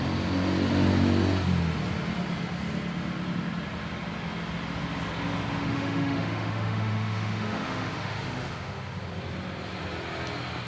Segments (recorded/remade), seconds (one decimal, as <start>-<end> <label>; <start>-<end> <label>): 0.0-5.6 recorded; 5.6-9.1 remade; 9.1-10.7 recorded